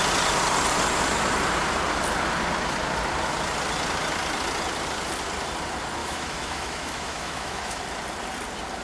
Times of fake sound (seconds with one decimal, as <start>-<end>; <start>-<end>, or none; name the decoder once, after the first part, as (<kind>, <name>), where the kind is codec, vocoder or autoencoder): 6.0-7.8 (autoencoder, DAC-VAE)